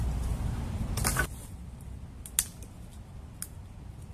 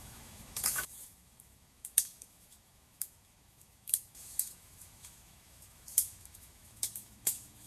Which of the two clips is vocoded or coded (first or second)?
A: second